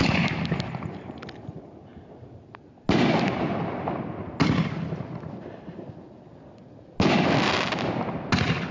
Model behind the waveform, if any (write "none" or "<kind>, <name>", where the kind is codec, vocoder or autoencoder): none